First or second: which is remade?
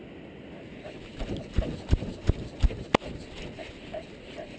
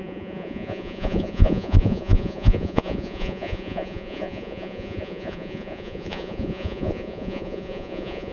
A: second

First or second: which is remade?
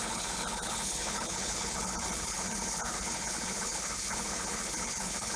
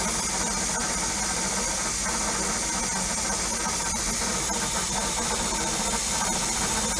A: first